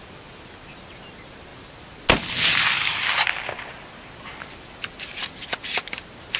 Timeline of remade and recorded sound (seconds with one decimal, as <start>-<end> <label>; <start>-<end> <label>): 0.0-6.4 recorded